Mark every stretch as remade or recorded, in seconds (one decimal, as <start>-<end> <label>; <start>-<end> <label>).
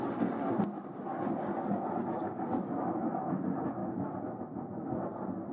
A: 0.0-5.5 recorded